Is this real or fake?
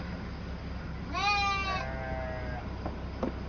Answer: real